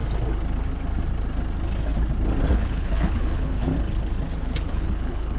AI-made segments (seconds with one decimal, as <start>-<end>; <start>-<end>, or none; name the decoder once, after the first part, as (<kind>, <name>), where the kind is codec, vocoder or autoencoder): 2.5-3.7 (codec, HILCodec); 4.4-5.4